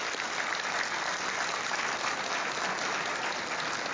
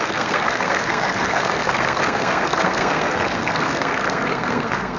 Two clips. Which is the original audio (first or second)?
first